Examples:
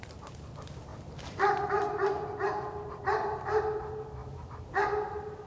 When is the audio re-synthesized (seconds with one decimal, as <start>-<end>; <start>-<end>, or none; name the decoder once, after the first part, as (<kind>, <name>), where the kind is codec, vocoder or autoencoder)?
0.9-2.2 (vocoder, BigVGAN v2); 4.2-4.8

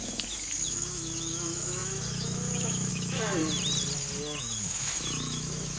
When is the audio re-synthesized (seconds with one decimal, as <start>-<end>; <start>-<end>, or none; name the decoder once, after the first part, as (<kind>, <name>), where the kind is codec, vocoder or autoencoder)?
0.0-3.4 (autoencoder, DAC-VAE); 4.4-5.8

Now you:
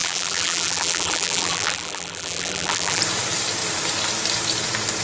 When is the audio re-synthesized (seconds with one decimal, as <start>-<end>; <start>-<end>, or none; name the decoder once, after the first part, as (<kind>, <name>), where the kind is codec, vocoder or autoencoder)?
0.0-3.0 (vocoder, BigVGAN v2)

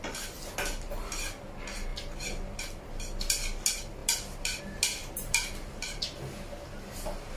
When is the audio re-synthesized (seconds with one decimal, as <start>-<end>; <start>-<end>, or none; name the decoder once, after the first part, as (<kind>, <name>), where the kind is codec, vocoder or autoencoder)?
5.0-6.2 (vocoder, BigVGAN v2)

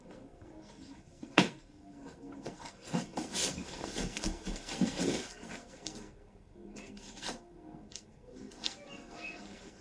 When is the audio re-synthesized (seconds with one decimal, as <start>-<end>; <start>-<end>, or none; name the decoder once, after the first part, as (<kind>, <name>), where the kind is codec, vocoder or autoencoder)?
0.0-9.8 (codec, SNAC)

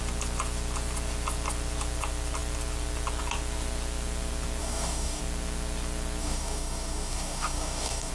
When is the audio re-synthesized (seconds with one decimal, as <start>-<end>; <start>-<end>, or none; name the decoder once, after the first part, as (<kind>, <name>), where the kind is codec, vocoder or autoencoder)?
4.6-5.2 (codec, DAC); 6.2-8.1

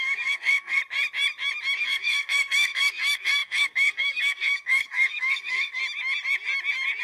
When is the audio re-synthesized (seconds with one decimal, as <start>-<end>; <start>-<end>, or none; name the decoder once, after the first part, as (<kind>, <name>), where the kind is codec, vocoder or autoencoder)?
0.0-0.8 (codec, SNAC); 1.8-5.8

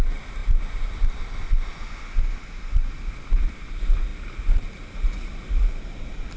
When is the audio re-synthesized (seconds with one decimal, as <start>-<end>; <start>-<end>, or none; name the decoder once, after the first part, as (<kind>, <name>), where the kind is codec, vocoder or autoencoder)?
none